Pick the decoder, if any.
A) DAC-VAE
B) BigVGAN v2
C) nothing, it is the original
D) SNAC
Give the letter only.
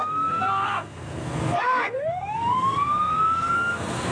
D